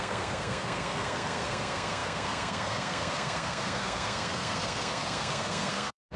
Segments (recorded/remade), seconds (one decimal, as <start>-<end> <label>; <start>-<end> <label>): 0.0-6.2 remade